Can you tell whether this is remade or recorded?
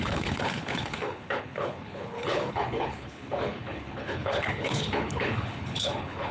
remade